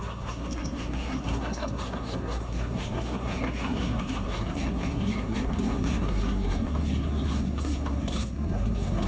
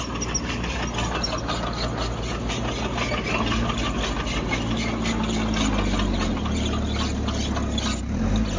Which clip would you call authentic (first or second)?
second